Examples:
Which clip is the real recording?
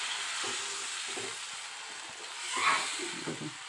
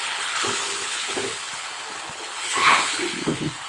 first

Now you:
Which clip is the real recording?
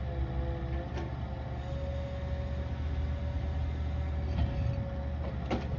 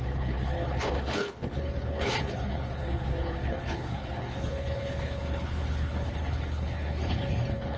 first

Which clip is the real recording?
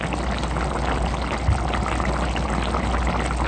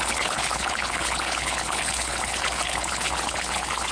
first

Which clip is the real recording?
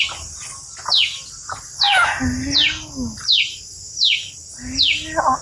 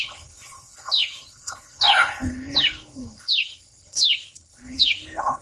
first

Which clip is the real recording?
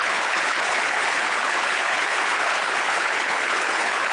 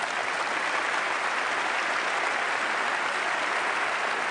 second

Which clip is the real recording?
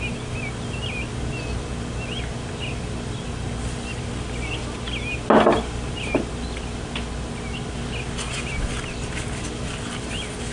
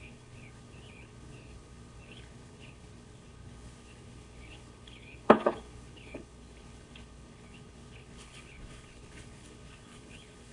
first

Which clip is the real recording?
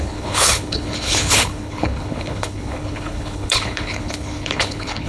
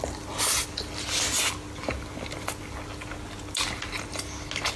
second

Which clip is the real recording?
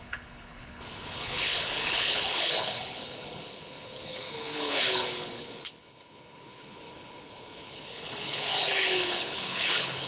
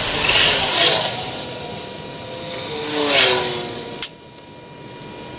second